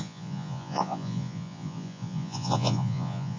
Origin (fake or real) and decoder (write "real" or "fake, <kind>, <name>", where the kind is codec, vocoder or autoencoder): fake, vocoder, Vocos